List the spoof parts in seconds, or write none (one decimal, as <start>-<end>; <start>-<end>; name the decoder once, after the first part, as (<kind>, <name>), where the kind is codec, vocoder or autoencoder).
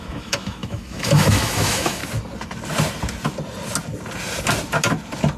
0.0-2.0 (autoencoder, DAC-VAE)